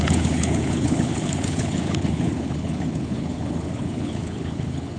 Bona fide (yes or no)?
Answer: no